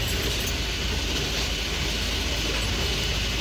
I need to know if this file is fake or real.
real